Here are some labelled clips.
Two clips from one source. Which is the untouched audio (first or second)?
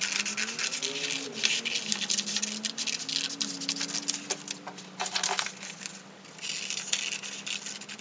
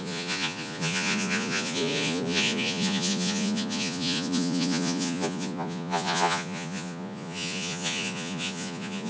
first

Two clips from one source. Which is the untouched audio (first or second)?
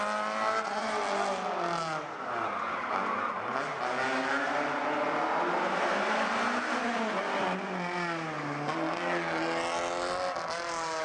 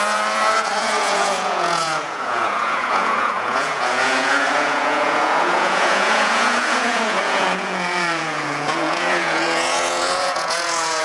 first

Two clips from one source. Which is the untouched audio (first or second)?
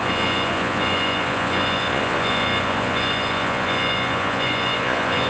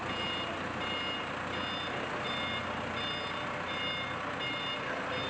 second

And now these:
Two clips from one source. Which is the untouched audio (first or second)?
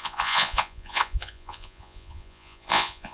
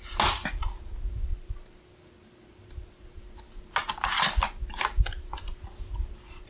second